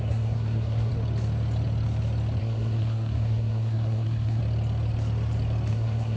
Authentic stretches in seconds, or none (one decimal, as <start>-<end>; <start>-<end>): 0.9-2.4; 4.4-5.7

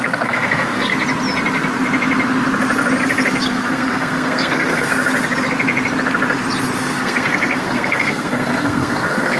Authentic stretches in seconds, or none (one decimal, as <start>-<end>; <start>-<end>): 0.9-3.4; 4.9-6.8

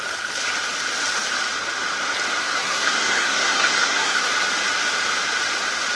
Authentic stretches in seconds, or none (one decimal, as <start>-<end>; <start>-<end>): 0.0-2.4; 4.3-6.0

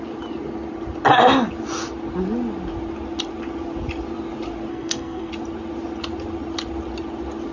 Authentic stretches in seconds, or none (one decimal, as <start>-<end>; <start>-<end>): 0.0-4.7; 5.3-7.5

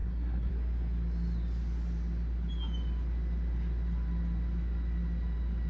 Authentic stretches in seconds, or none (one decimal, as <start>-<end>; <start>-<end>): 0.5-5.7

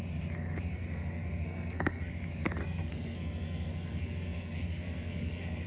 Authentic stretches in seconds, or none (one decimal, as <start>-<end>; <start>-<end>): 0.0-0.7; 2.1-2.6

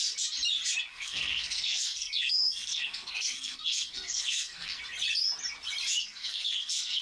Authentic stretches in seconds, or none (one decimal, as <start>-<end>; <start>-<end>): 0.0-0.9; 4.8-6.0